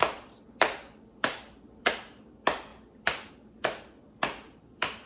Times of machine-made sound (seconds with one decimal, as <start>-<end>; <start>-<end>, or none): none